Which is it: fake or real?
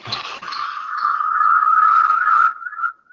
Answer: fake